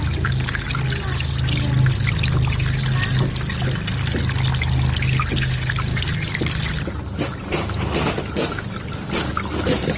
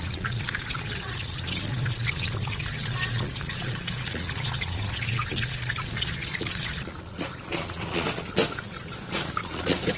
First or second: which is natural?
first